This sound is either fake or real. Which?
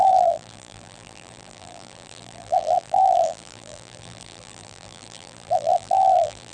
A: fake